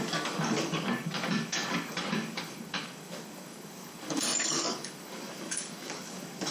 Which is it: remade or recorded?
remade